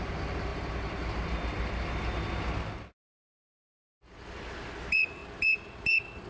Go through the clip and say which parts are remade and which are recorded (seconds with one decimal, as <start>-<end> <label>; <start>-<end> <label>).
0.0-6.3 recorded